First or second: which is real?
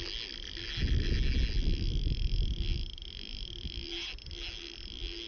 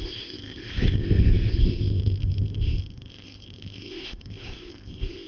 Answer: first